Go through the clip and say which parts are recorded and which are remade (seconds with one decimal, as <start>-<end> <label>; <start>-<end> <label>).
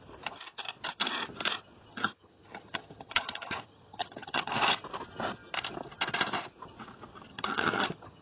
0.0-1.9 recorded; 1.9-4.5 remade; 4.5-7.3 recorded; 7.3-8.2 remade